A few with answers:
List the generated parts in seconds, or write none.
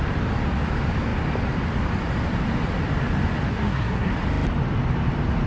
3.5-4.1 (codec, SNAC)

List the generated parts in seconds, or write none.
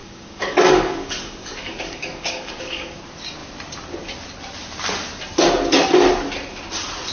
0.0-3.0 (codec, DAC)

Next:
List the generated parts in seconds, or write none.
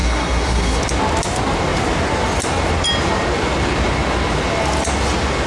0.0-0.8 (codec, SNAC)